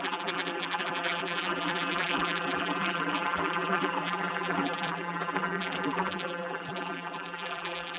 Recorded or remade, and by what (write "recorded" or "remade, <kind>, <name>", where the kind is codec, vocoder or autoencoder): remade, vocoder, BigVGAN v2